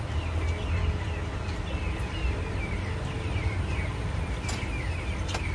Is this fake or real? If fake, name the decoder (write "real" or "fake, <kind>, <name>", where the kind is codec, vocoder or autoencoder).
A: real